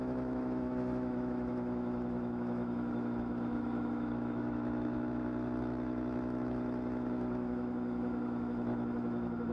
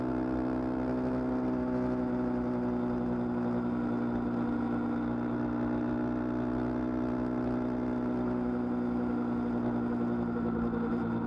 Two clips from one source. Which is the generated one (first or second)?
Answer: first